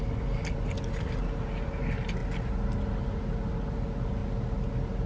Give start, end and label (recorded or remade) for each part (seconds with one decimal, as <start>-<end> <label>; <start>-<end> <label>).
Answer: 0.0-5.1 recorded